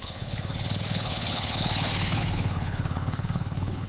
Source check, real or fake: fake